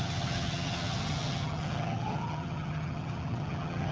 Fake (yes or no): yes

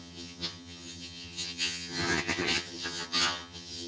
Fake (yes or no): yes